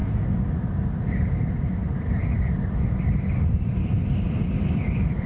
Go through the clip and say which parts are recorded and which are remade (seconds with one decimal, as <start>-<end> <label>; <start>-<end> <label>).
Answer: 0.0-1.8 recorded; 1.8-5.3 remade